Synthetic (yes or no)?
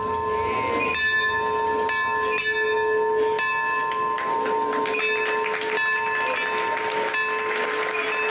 no